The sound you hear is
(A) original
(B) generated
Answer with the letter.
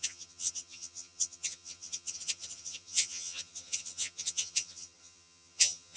B